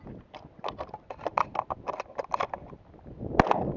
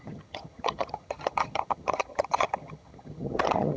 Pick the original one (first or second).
first